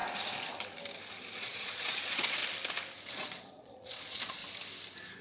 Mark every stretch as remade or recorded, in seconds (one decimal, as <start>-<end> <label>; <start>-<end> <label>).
0.0-1.4 recorded; 1.4-2.4 remade; 2.4-3.1 recorded; 3.1-4.4 remade; 4.4-5.2 recorded